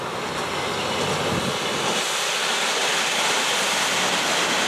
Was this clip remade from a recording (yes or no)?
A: no